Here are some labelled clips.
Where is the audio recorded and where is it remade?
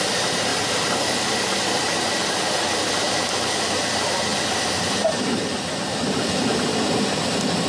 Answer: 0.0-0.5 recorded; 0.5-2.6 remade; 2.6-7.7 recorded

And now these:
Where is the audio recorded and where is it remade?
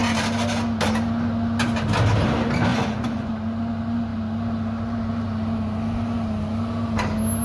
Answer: 0.0-2.7 recorded; 2.7-3.3 remade; 3.3-7.4 recorded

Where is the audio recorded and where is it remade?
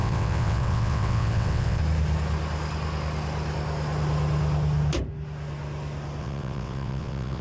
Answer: 0.0-1.8 remade; 1.8-6.2 recorded; 6.2-7.4 remade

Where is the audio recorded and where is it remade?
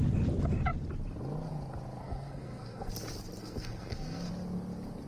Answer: 0.0-2.0 recorded; 2.0-2.9 remade; 2.9-3.4 recorded; 3.4-4.3 remade; 4.3-5.1 recorded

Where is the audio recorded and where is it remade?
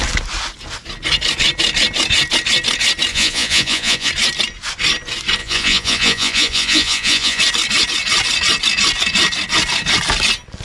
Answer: 0.0-3.1 recorded; 3.1-4.1 remade; 4.1-5.4 recorded; 5.4-7.4 remade; 7.4-10.6 recorded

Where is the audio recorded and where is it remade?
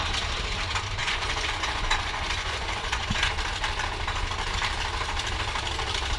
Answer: 0.0-1.0 recorded; 1.0-3.3 remade; 3.3-6.2 recorded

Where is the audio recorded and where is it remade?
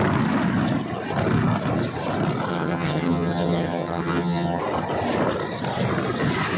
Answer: 0.0-2.5 recorded; 2.5-4.6 remade; 4.6-6.6 recorded